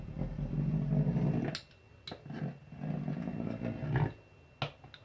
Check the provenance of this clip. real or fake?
real